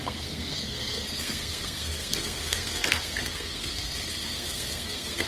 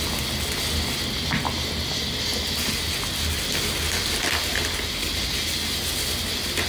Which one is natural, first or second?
second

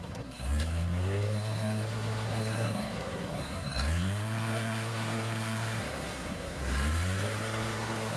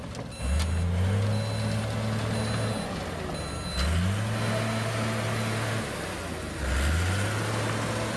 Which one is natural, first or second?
second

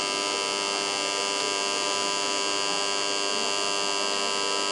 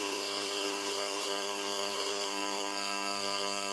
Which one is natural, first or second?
first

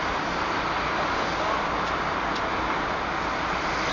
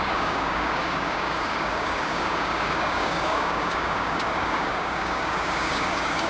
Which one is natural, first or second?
first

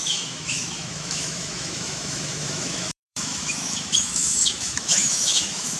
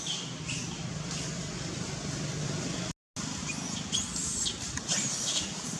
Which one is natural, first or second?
second